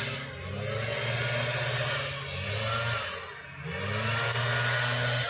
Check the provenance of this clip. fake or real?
real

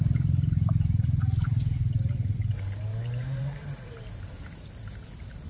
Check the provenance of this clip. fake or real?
fake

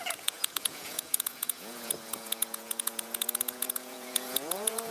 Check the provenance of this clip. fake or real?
fake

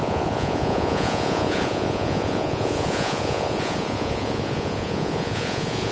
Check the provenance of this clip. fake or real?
fake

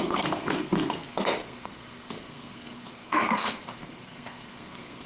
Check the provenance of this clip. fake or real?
fake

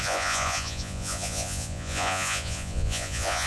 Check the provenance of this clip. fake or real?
fake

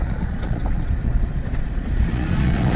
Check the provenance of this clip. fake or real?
fake